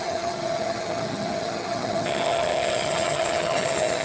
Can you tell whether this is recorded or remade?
remade